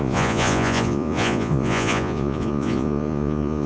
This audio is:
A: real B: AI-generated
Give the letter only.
B